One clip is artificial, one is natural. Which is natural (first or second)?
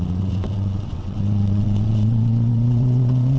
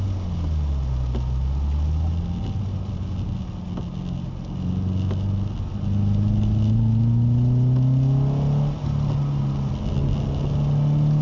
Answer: second